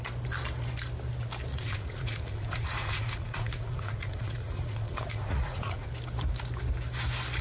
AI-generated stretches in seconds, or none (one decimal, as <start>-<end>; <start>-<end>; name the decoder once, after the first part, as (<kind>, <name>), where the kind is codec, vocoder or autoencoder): 1.5-5.9 (vocoder, Vocos)